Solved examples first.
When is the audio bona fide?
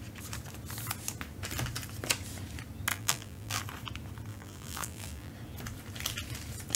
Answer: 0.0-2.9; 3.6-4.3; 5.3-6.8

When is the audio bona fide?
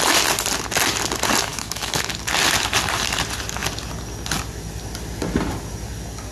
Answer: 0.0-1.5; 2.1-6.3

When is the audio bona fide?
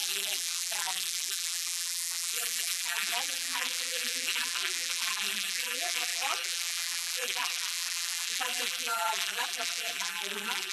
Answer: none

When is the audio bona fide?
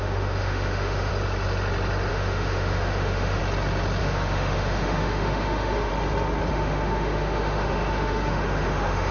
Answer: 1.1-2.1; 3.4-4.0; 5.9-6.5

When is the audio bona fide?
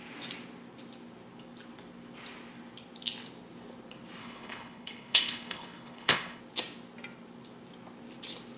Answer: 0.0-4.2; 6.4-8.6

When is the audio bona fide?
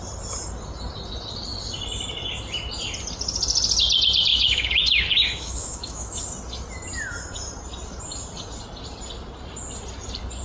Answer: 0.0-4.3; 6.2-10.4